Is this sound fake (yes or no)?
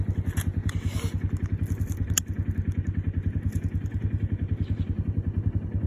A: no